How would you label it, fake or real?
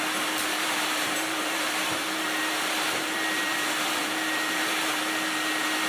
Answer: fake